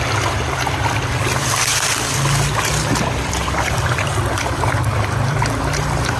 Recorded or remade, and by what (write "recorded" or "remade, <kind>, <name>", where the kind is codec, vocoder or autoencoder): remade, vocoder, BigVGAN v2